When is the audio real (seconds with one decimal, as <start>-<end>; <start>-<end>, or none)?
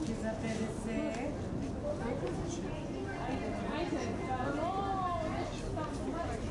0.0-6.5